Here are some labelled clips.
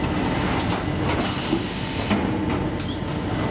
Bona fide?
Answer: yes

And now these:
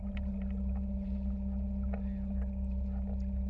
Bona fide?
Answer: yes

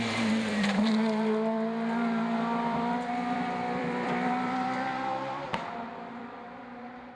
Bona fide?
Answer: no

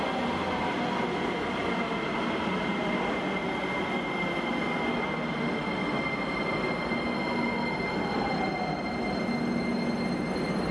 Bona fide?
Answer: yes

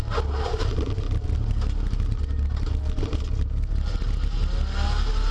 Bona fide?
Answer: yes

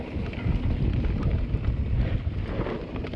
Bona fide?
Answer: yes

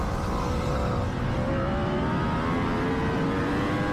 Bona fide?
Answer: yes